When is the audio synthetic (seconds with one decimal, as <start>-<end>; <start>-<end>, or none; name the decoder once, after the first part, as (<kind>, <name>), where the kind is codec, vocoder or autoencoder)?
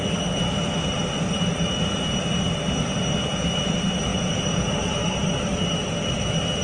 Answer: 4.1-4.9 (vocoder, Vocos)